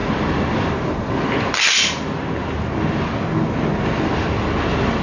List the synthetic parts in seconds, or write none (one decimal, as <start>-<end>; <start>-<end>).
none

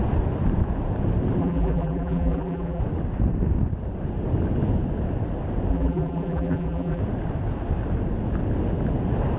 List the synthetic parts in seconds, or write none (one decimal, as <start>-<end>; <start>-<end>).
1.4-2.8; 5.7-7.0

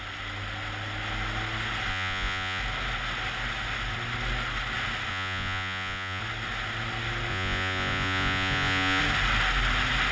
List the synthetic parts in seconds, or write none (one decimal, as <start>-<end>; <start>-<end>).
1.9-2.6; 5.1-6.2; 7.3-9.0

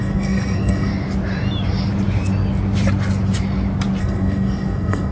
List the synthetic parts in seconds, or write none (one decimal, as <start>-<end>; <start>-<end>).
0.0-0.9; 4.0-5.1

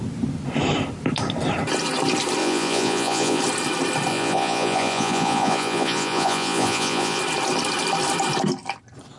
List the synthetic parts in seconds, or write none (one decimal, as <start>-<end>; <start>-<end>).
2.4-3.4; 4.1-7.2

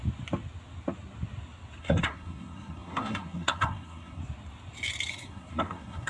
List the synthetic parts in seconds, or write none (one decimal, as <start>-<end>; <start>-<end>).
1.8-4.2; 5.1-6.1

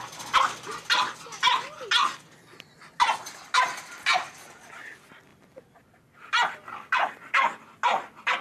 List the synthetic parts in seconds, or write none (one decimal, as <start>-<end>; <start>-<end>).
5.3-7.1

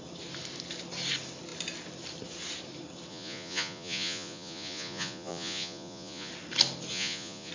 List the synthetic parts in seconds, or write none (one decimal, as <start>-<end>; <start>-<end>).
3.1-6.3; 6.9-7.5